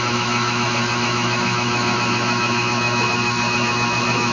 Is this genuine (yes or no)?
no